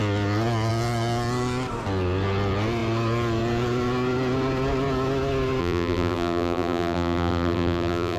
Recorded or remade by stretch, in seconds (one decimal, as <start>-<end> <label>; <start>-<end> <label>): 0.0-5.6 recorded; 5.6-8.2 remade